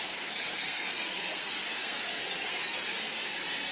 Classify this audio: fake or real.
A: fake